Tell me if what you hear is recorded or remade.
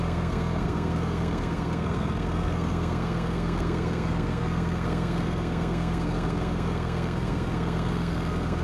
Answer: remade